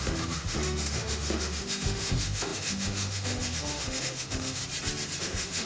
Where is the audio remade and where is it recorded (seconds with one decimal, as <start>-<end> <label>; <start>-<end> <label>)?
0.0-4.6 remade; 4.6-5.2 recorded; 5.2-5.7 remade